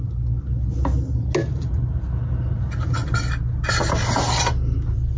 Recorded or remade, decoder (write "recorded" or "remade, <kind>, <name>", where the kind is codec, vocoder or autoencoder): recorded